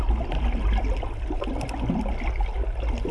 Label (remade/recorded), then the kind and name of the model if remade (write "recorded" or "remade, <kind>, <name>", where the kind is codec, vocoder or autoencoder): recorded